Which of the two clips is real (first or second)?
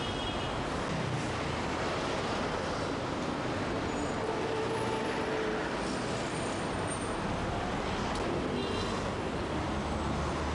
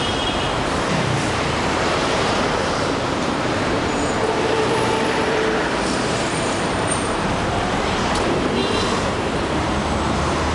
first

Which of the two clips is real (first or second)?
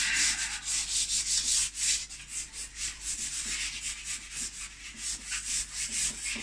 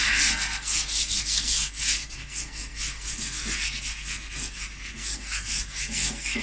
first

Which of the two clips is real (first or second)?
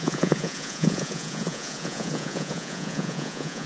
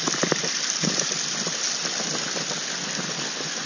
second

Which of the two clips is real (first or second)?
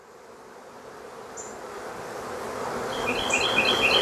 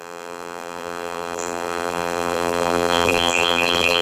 first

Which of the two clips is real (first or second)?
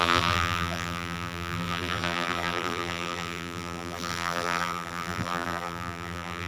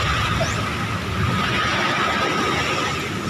second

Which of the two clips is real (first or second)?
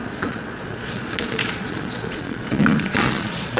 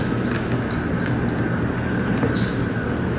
second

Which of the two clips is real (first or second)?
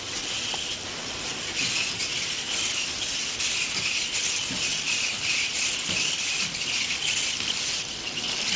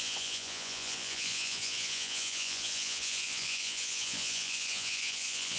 first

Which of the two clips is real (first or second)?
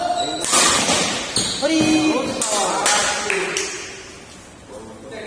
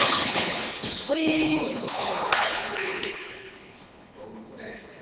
first